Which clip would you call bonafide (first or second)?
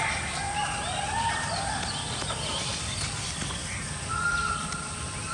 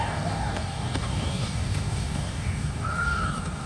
first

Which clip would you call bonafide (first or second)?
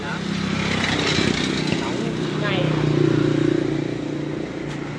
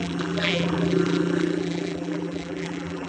first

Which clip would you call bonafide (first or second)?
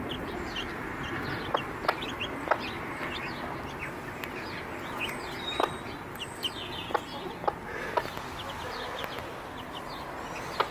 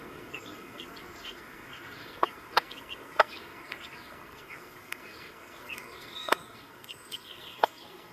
first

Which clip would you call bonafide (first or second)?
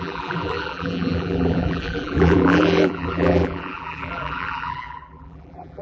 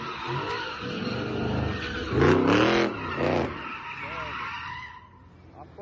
second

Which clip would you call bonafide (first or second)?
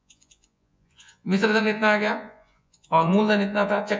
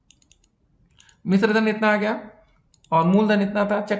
second